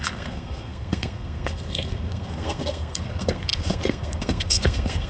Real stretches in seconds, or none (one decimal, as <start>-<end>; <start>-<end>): none